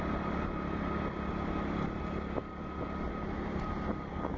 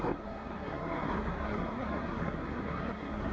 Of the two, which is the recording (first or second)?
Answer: first